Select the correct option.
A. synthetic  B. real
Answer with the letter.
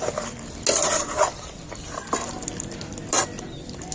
B